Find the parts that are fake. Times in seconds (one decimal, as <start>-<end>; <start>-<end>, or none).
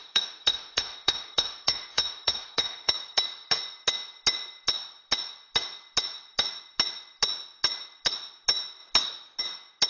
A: 0.0-2.9